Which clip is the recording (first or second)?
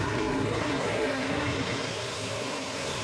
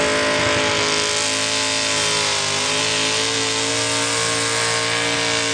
second